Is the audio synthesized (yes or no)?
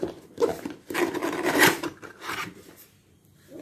yes